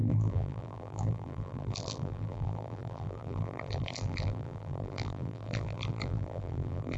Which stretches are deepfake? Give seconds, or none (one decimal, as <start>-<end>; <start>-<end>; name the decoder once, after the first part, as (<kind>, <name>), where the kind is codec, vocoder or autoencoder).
0.0-7.0 (vocoder, BigVGAN v2)